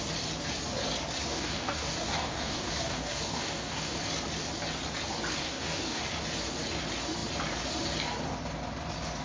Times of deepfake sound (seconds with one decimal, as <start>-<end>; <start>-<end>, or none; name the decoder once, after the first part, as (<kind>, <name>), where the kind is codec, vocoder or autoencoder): 1.3-4.0 (codec, DAC); 5.4-6.0